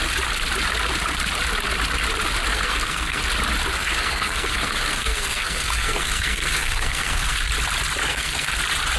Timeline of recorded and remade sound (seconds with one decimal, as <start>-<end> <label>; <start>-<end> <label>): 0.0-2.5 recorded; 2.5-3.2 remade; 3.2-3.7 recorded; 3.7-7.4 remade; 7.4-8.0 recorded; 8.0-8.6 remade; 8.6-9.0 recorded